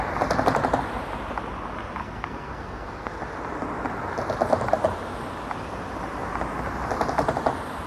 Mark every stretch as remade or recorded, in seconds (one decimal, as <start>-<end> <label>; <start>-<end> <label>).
0.0-2.0 recorded; 2.0-3.2 remade; 3.2-7.9 recorded